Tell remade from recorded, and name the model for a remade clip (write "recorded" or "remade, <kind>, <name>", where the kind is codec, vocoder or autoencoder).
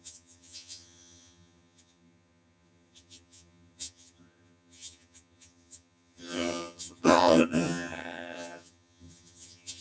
remade, vocoder, HiFi-GAN